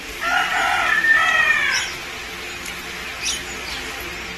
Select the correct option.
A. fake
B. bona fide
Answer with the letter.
B